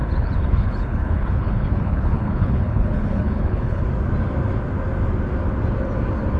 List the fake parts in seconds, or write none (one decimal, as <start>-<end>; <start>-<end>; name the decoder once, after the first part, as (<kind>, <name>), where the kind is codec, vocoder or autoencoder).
0.0-3.8 (codec, HILCodec)